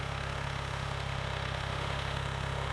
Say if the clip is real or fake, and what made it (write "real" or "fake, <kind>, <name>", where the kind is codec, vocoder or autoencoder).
fake, autoencoder, DAC-VAE